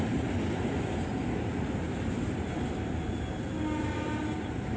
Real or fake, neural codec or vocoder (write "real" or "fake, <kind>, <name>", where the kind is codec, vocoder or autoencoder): real